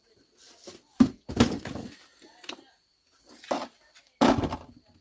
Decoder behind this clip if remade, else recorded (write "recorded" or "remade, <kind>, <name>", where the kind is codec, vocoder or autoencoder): recorded